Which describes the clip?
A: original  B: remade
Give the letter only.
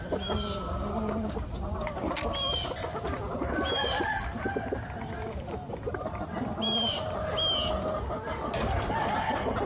A